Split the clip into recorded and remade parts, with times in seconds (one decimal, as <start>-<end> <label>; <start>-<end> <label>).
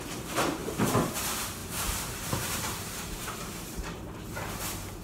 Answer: 0.0-0.6 recorded; 0.6-1.1 remade; 1.1-1.6 recorded; 1.6-4.6 remade; 4.6-5.0 recorded